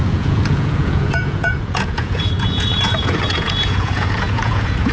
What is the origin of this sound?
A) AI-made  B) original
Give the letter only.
A